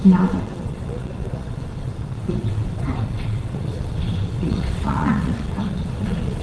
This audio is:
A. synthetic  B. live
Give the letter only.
A